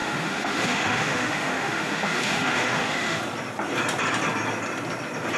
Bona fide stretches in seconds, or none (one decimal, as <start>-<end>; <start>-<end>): 3.2-5.4